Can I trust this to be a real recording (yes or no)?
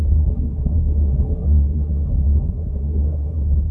no